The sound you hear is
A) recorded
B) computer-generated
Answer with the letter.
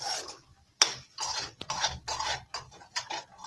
A